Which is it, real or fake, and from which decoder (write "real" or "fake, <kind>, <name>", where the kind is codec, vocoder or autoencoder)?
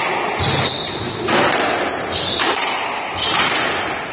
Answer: real